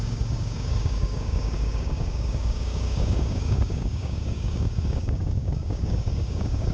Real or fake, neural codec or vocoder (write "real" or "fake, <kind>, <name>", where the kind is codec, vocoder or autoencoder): fake, codec, DAC